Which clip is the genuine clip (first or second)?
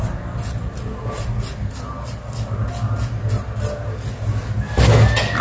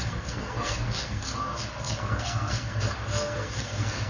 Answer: first